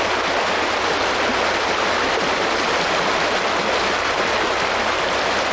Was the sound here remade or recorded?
recorded